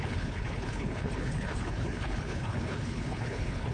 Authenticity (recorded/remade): remade